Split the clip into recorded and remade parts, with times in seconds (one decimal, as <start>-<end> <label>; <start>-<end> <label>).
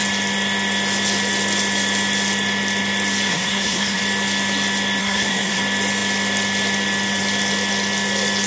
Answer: 0.0-3.3 recorded; 3.3-4.0 remade; 4.0-5.0 recorded; 5.0-5.6 remade; 5.6-8.5 recorded